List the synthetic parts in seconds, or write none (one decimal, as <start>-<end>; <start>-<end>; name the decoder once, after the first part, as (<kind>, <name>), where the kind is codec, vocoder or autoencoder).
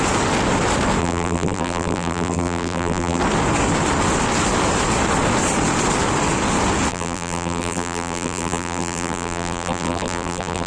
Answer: 1.0-3.2 (vocoder, BigVGAN v2); 6.9-10.7